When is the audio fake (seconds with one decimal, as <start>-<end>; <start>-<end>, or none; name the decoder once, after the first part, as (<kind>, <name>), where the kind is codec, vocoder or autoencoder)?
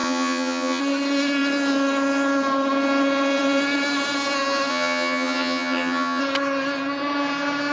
0.0-0.8 (vocoder, HiFi-GAN); 4.7-6.2